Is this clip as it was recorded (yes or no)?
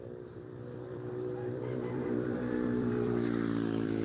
no